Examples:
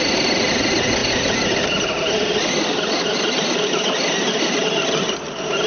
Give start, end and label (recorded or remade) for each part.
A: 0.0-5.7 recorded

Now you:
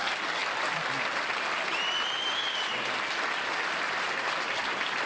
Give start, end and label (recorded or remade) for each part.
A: 0.0-5.1 recorded